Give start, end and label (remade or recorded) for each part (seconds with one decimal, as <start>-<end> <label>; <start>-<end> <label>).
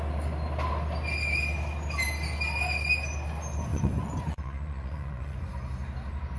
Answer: 0.0-3.7 recorded; 3.7-5.5 remade; 5.5-6.4 recorded